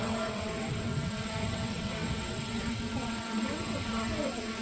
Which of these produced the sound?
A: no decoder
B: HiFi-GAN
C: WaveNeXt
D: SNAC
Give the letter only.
C